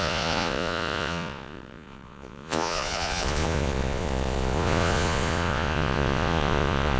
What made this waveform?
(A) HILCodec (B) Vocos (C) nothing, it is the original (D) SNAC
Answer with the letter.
B